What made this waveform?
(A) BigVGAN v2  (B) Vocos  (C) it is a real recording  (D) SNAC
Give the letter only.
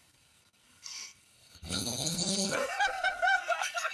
D